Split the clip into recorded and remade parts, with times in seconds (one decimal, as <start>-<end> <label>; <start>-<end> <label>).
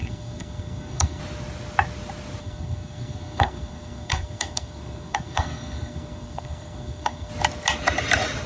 0.0-1.2 remade; 1.2-2.4 recorded; 2.4-7.3 remade; 7.3-8.5 recorded